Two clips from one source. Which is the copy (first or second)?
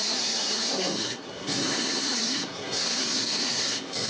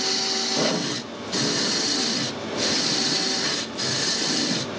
first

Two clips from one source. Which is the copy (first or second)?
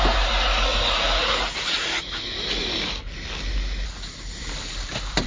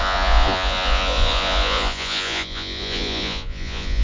second